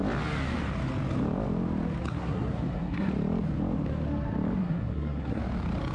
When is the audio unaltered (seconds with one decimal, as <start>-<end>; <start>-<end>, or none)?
0.0-2.1; 3.1-4.6; 5.4-5.9